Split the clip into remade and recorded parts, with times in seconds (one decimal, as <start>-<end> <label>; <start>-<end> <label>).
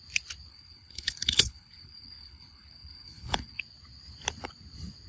0.0-0.5 recorded; 0.5-3.6 remade; 3.6-5.1 recorded